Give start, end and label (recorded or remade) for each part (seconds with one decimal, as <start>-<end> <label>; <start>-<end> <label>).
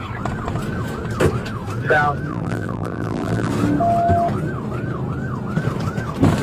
0.0-2.3 recorded; 2.3-3.5 remade; 3.5-6.4 recorded